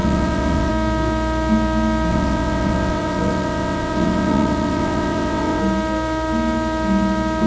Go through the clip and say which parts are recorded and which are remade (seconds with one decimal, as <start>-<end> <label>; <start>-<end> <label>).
0.0-0.7 remade; 0.7-2.1 recorded; 2.1-5.6 remade; 5.6-7.5 recorded